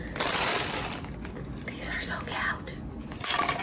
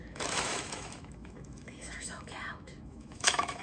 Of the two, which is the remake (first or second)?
second